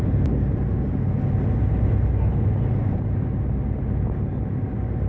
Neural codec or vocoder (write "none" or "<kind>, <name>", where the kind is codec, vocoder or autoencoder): none